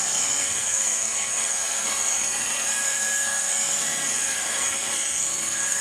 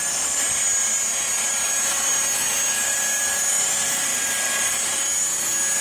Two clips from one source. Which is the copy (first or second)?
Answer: first